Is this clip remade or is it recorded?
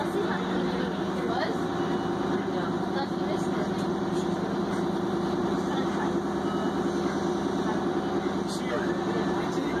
recorded